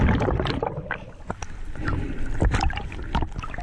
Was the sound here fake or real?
real